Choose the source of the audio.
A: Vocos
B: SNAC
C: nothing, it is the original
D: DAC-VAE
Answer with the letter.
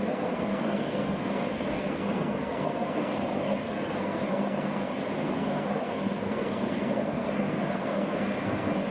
B